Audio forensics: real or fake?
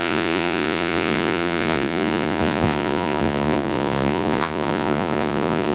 fake